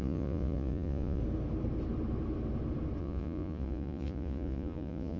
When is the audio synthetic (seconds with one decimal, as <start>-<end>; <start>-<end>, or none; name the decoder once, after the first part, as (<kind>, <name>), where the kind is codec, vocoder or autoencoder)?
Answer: 0.0-1.2 (vocoder, Vocos); 3.0-5.2